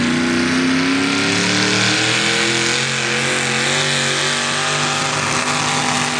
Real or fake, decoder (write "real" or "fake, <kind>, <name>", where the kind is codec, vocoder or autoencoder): real